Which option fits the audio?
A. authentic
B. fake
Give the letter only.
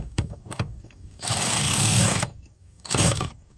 B